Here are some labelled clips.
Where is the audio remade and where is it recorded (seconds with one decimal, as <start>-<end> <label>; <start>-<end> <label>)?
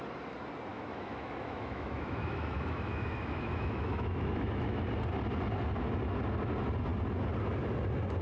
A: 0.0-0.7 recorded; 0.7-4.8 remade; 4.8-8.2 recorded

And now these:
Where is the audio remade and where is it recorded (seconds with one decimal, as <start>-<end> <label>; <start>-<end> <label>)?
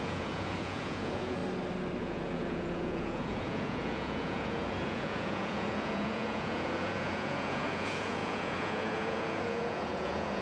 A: 0.0-1.4 remade; 1.4-2.0 recorded; 2.0-10.4 remade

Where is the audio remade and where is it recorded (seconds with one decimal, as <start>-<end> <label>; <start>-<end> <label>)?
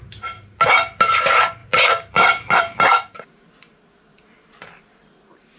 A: 0.0-5.6 recorded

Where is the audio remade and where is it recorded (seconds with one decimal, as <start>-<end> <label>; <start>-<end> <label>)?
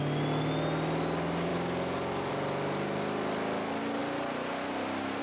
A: 0.0-5.2 recorded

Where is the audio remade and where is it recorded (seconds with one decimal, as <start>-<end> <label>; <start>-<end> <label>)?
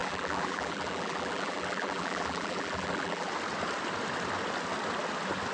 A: 0.0-3.3 remade; 3.3-5.5 recorded